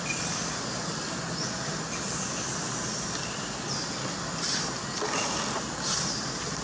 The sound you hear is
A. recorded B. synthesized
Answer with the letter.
A